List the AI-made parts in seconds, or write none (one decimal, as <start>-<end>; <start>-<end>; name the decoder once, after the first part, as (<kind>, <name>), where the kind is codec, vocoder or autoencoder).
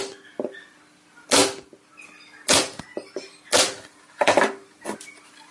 none